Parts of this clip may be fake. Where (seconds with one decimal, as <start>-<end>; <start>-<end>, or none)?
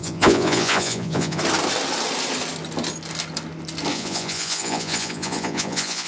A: 0.0-1.4; 3.9-6.1